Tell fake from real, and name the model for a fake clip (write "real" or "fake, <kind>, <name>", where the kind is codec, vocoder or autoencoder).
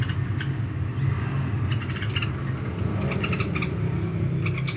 real